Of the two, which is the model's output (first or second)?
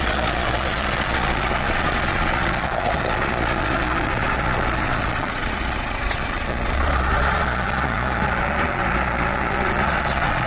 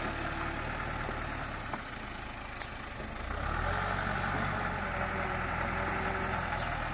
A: first